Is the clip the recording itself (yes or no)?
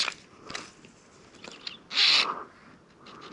yes